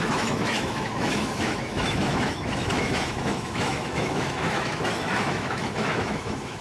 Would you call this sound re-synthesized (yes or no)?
yes